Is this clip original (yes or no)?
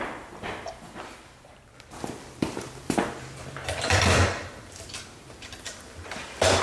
no